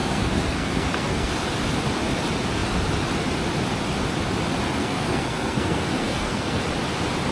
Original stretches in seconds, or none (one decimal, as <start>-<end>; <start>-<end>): 1.3-4.8; 6.6-7.3